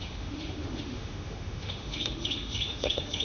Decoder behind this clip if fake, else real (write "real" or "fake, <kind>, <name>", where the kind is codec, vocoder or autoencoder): fake, autoencoder, DAC-VAE